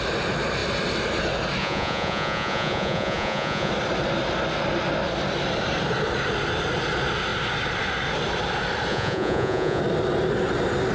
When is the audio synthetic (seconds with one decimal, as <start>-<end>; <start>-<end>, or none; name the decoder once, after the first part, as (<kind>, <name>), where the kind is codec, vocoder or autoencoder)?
1.6-3.7 (vocoder, Vocos); 8.9-9.8